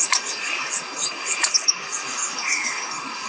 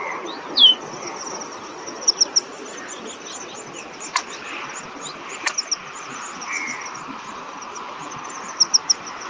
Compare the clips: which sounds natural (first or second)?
second